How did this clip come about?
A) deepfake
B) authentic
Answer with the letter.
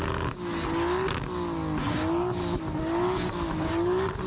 B